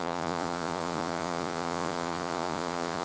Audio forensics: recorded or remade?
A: remade